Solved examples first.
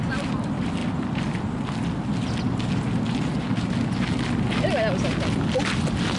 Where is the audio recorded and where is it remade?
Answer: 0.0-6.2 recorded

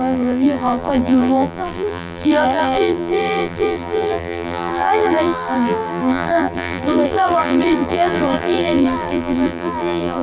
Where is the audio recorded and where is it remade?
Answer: 0.0-10.2 remade

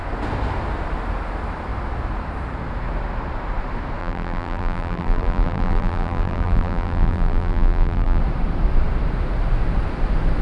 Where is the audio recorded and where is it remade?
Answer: 0.0-4.0 recorded; 4.0-8.2 remade; 8.2-10.4 recorded

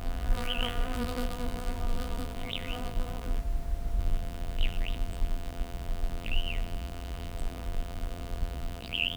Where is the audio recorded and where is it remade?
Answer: 0.0-3.4 remade; 3.4-4.0 recorded; 4.0-9.2 remade